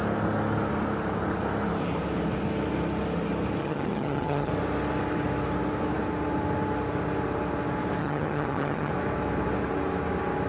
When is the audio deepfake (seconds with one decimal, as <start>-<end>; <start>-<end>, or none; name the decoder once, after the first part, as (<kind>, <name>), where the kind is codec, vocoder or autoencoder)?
3.6-4.5 (vocoder, HiFi-GAN); 8.0-8.9